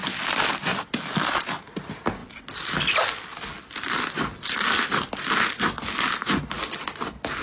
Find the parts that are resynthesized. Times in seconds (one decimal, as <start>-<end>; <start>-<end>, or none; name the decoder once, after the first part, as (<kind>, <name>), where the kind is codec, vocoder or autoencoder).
none